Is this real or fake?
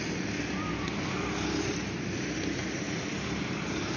real